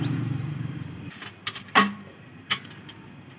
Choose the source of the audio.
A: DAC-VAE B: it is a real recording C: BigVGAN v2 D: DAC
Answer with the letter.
C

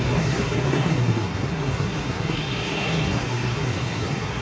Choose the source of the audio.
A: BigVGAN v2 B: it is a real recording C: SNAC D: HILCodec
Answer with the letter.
C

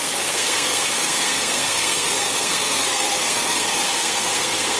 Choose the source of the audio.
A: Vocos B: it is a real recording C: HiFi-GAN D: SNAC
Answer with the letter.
D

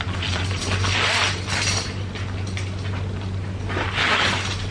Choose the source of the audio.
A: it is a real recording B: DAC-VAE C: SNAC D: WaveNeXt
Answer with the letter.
A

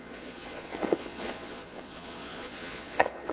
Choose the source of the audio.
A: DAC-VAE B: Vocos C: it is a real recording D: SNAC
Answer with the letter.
B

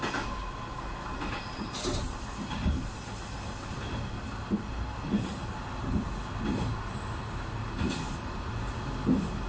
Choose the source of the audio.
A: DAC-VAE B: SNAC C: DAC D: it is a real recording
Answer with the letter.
D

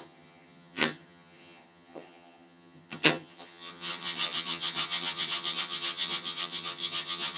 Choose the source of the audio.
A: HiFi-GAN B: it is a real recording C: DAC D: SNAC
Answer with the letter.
A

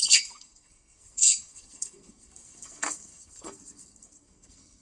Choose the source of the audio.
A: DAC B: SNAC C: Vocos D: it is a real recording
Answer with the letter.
B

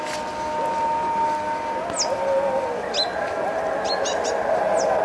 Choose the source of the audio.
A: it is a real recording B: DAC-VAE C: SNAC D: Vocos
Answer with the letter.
A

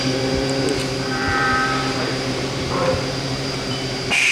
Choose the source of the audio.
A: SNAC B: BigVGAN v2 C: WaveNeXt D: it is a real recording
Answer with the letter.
B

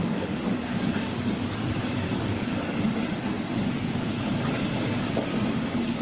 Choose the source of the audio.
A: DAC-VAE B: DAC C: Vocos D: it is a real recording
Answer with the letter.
B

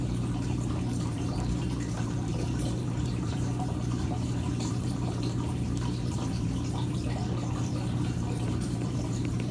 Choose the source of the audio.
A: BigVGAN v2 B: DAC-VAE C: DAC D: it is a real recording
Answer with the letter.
A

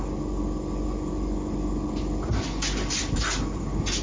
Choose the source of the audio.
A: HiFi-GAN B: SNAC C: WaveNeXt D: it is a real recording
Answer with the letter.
D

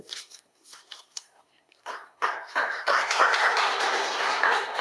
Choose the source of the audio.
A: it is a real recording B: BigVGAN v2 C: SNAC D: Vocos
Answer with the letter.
C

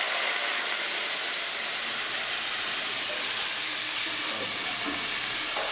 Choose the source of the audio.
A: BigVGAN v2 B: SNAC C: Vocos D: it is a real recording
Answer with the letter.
D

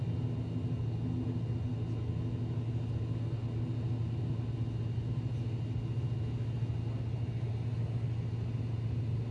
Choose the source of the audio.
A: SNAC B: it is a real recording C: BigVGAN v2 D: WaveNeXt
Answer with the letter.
B